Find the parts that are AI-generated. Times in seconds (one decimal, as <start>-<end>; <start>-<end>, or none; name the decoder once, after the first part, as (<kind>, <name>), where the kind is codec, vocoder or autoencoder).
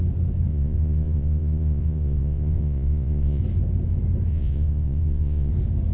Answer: 0.5-3.4 (vocoder, Vocos); 4.3-5.5